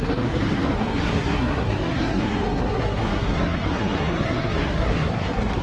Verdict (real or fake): fake